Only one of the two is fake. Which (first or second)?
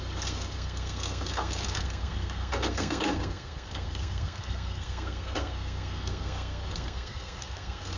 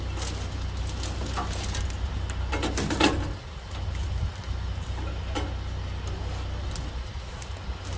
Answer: first